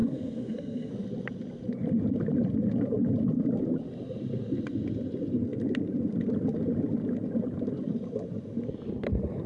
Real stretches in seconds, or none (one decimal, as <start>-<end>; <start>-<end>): 0.9-9.5